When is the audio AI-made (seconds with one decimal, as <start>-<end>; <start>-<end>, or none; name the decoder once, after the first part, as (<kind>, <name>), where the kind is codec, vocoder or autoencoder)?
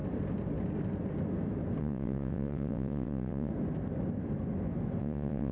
1.8-3.5 (vocoder, WaveNeXt); 5.0-5.5